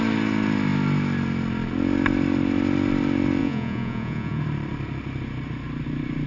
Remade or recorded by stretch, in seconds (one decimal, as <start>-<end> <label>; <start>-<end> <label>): 0.0-3.4 recorded; 3.4-4.4 remade; 4.4-6.3 recorded